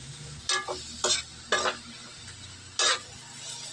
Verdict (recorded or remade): recorded